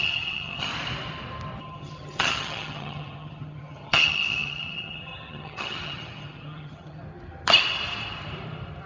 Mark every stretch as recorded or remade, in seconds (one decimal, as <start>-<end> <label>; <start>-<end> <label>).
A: 0.0-0.7 remade; 0.7-1.6 recorded; 1.6-7.0 remade; 7.0-8.9 recorded